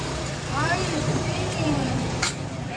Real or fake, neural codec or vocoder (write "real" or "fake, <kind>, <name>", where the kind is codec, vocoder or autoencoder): fake, vocoder, BigVGAN v2